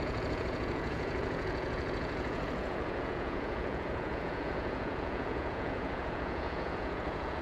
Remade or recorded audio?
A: remade